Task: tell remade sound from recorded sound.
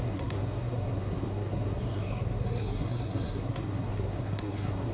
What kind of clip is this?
remade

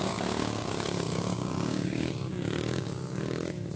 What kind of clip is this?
remade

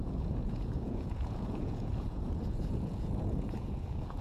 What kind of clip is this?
remade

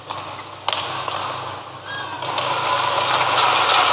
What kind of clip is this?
recorded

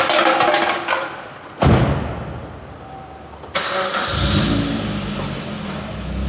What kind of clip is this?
recorded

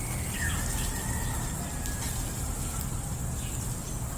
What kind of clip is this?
recorded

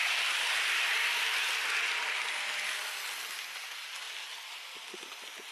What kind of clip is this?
recorded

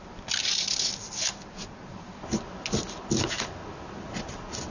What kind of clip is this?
recorded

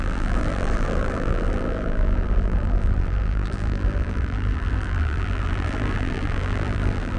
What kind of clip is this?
remade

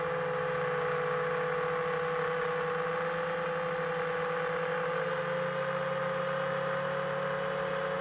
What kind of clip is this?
recorded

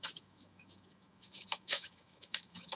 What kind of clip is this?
remade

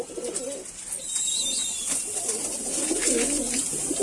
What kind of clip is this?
recorded